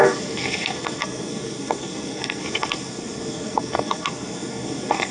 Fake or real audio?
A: fake